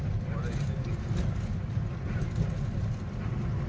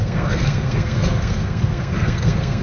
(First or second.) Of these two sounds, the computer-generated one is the second